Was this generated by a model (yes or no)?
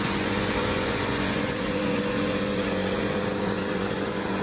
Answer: yes